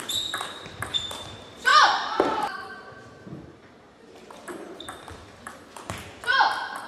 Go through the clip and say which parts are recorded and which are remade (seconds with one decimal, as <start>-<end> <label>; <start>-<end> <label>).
0.0-6.9 remade